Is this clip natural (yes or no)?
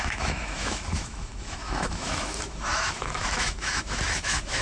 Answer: no